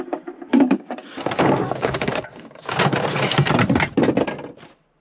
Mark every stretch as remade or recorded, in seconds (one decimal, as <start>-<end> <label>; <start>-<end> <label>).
0.0-0.5 recorded; 0.5-3.5 remade; 3.5-5.0 recorded